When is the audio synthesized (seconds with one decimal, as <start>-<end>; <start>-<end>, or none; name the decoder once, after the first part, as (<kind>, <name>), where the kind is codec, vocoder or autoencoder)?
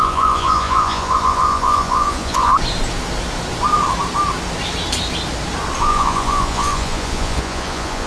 0.0-2.5 (vocoder, Vocos); 5.8-8.1